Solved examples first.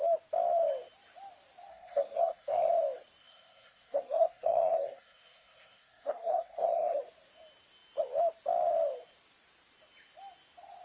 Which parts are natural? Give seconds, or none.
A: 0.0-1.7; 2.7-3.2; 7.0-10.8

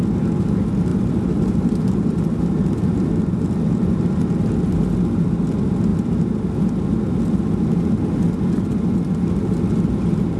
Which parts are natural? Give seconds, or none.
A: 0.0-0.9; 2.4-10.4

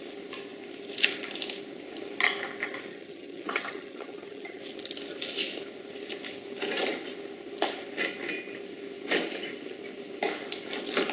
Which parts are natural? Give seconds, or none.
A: 0.0-2.9; 4.6-11.1

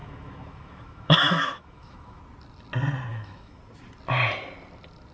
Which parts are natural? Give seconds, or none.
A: 2.2-3.1; 3.6-5.1

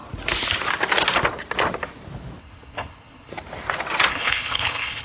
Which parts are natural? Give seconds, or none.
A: 0.0-2.4; 3.3-4.1

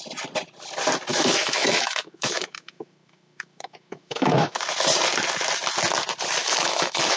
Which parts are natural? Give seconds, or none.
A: 0.0-1.1; 4.6-6.4